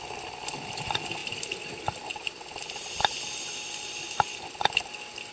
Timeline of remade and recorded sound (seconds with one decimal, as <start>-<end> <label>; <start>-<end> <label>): 0.0-5.3 recorded